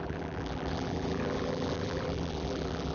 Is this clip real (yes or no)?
no